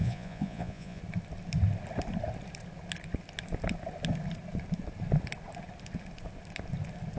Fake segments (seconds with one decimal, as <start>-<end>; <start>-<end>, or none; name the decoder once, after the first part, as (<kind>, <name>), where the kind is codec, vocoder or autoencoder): 0.0-1.0 (vocoder, Vocos)